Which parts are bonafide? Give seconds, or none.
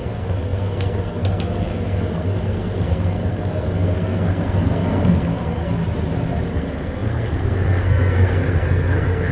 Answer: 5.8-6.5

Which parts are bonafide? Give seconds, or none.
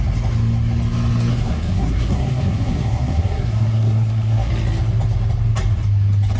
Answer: 0.0-1.3; 4.5-6.4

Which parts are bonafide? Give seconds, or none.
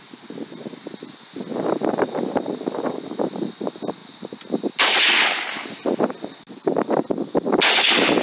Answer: 0.0-8.2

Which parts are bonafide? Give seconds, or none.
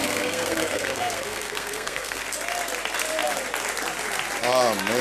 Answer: 2.2-5.0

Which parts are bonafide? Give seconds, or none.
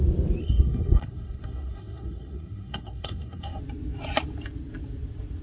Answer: 0.0-0.4; 3.6-5.4